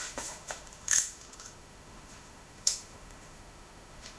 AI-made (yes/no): yes